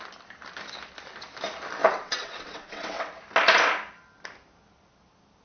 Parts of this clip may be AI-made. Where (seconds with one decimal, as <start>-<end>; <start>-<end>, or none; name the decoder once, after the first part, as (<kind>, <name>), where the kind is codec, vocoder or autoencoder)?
1.8-3.1 (vocoder, WaveNeXt)